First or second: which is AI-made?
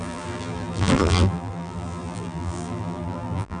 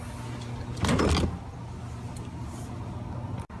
first